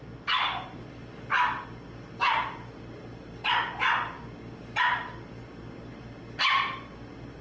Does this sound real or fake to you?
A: real